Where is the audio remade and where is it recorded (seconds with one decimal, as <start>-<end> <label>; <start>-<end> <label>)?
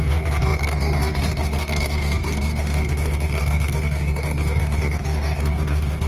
0.0-6.1 remade